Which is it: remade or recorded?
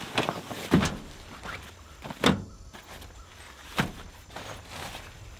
recorded